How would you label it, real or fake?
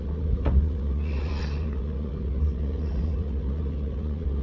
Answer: fake